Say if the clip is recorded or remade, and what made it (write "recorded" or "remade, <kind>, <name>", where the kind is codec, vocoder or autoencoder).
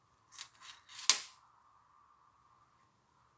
recorded